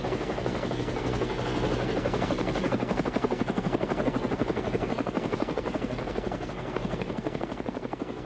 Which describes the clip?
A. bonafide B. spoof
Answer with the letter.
B